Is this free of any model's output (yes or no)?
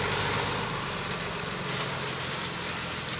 yes